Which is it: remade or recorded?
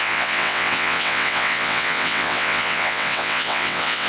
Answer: remade